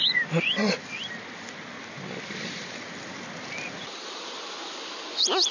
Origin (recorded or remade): recorded